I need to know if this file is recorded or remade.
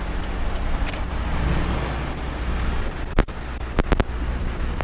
recorded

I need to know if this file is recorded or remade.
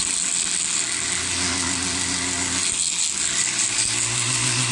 recorded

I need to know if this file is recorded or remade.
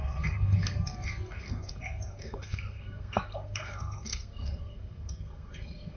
remade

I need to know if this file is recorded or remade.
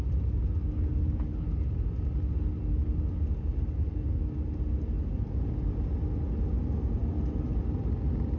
recorded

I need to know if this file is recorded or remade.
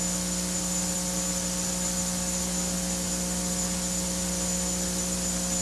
recorded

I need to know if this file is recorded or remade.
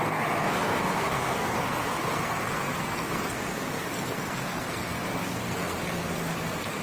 remade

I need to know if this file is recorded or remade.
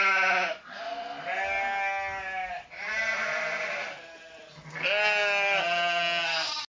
recorded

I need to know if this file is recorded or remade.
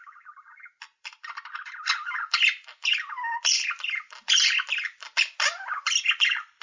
recorded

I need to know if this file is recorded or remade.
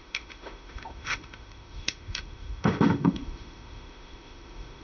remade